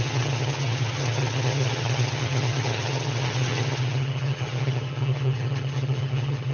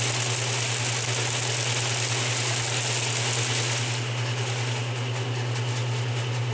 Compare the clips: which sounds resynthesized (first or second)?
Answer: first